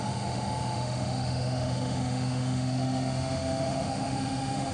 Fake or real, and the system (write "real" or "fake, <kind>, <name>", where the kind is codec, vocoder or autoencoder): fake, autoencoder, DAC-VAE